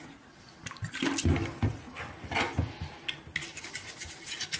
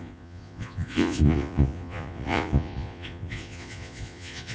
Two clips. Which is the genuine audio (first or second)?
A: first